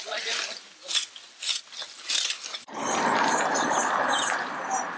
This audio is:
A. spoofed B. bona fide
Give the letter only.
B